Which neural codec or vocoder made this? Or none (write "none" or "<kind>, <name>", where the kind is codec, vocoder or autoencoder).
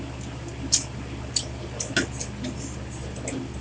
none